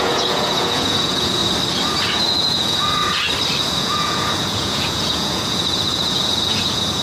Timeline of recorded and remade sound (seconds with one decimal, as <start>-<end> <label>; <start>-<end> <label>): 0.0-1.4 remade; 1.4-2.1 recorded; 2.1-3.0 remade; 3.0-3.6 recorded; 3.6-7.0 remade